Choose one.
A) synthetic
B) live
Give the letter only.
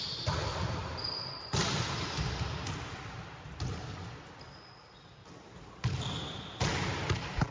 B